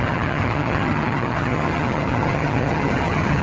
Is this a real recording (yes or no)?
no